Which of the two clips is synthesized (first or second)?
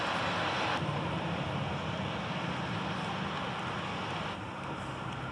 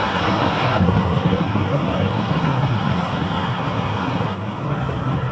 second